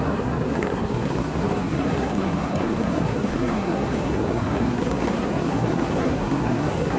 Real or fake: fake